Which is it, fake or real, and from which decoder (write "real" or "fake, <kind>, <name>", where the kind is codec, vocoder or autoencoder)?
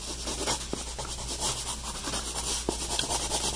real